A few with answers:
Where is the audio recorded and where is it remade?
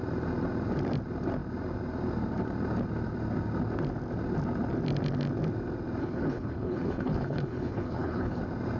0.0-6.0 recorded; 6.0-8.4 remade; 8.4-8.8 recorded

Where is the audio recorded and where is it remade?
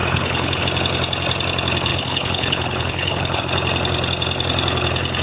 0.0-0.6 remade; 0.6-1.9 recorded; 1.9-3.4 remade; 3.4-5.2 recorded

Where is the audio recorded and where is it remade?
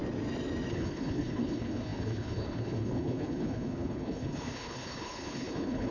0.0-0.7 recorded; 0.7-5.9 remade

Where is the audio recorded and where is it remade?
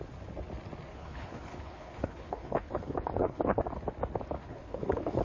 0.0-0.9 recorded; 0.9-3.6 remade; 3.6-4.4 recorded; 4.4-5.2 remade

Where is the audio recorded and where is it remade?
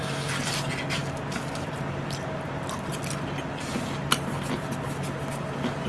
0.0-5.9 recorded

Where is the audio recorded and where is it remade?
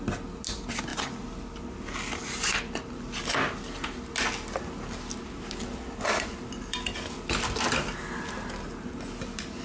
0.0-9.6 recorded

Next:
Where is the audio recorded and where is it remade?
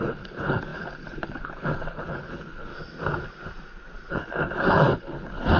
0.0-2.7 remade; 2.7-4.1 recorded; 4.1-5.6 remade